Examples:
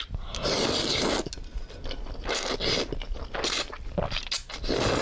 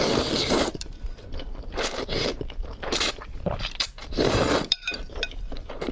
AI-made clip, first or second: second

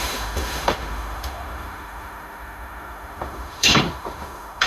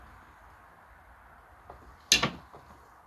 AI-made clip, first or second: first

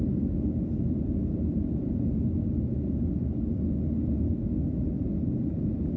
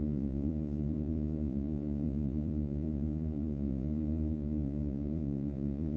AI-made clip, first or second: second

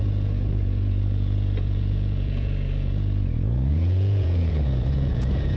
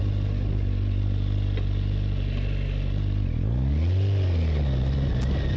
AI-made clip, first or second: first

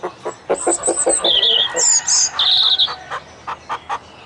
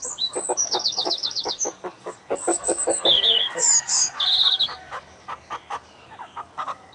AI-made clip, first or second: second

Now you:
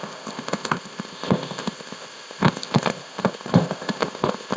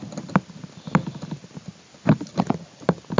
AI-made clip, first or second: first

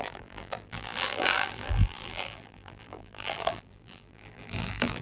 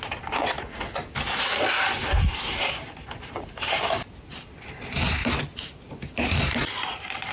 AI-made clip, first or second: first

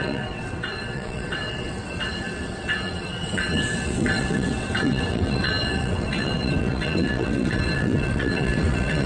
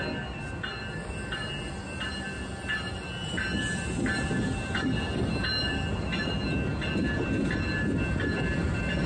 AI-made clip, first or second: first